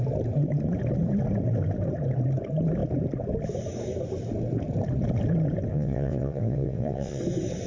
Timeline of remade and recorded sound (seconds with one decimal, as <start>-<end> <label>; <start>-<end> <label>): 0.0-5.7 recorded; 5.7-7.2 remade; 7.2-7.7 recorded